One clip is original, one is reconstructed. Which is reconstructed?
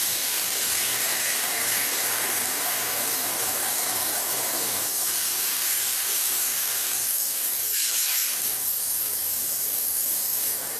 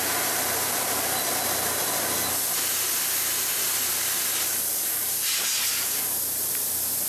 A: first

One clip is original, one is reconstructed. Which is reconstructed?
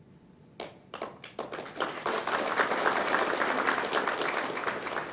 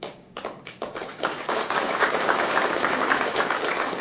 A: second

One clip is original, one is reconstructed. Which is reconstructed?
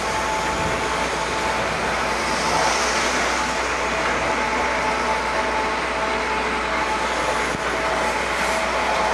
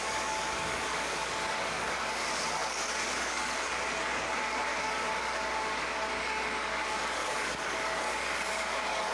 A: second